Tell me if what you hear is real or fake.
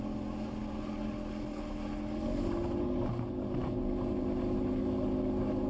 real